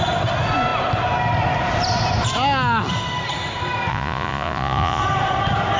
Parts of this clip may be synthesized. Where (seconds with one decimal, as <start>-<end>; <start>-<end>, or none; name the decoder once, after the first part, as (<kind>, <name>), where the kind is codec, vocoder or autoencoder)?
3.9-5.0 (vocoder, Vocos)